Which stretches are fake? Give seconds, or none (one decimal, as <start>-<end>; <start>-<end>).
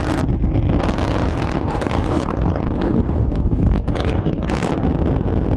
1.3-4.7